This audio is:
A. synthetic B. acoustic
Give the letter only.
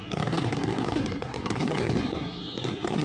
A